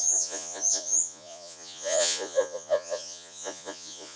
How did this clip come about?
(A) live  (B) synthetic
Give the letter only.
B